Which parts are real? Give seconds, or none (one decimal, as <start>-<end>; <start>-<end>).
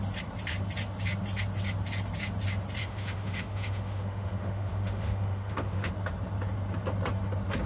0.0-2.8; 5.9-7.7